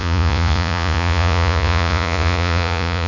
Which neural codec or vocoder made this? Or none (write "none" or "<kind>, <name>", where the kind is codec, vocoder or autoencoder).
vocoder, Vocos